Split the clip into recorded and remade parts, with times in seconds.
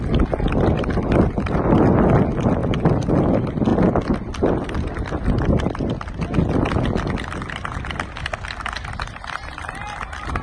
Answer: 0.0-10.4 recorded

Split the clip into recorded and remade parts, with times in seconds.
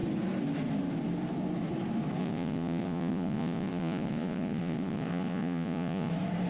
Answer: 0.0-2.2 recorded; 2.2-6.1 remade; 6.1-6.5 recorded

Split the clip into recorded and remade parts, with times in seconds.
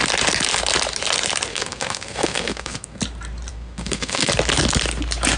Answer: 0.0-1.5 recorded; 1.5-3.0 remade; 3.0-3.5 recorded; 3.5-4.3 remade; 4.3-5.4 recorded